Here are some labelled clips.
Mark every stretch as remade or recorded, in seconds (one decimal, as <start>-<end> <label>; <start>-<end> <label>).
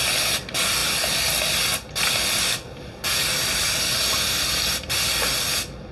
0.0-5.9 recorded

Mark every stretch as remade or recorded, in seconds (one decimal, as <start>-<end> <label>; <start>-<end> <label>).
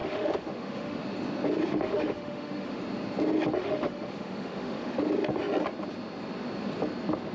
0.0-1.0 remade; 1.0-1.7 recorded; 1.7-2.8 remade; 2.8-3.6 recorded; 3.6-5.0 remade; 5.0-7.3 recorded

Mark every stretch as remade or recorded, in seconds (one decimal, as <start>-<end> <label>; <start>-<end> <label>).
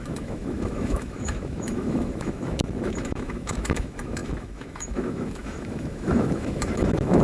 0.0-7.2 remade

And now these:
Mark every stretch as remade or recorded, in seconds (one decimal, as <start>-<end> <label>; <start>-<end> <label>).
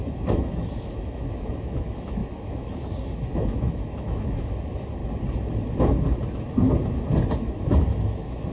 0.0-5.0 remade; 5.0-7.3 recorded; 7.3-8.5 remade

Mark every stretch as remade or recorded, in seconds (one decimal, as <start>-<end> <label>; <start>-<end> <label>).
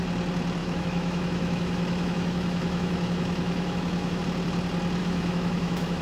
0.0-0.6 recorded; 0.6-4.2 remade; 4.2-5.0 recorded; 5.0-6.0 remade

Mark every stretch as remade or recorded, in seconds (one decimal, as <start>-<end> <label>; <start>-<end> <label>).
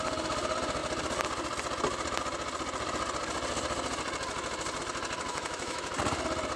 0.0-5.3 recorded; 5.3-5.9 remade; 5.9-6.6 recorded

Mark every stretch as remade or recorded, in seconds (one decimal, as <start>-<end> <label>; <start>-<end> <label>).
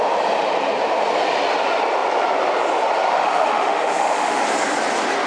0.0-3.1 recorded; 3.1-4.4 remade; 4.4-5.3 recorded